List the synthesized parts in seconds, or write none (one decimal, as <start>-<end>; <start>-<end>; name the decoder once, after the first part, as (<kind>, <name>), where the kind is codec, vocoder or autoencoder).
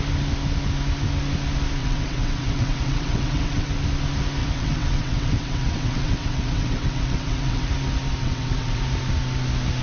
1.8-3.7 (vocoder, WaveNeXt); 4.4-7.7; 8.2-8.8